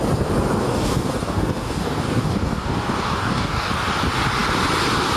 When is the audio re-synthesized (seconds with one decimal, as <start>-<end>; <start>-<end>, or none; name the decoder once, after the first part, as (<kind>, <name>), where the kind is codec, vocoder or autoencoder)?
0.6-3.7 (codec, DAC)